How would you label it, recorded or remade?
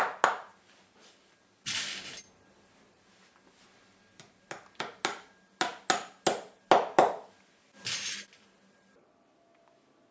recorded